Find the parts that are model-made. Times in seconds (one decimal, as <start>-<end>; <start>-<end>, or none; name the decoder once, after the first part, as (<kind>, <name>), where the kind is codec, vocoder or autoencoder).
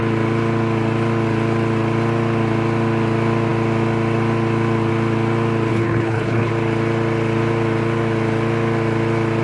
5.7-6.5 (codec, HILCodec)